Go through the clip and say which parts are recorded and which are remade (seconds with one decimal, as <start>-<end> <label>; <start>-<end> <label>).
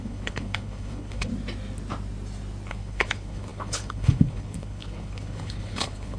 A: 0.0-1.3 remade; 1.3-2.7 recorded; 2.7-6.2 remade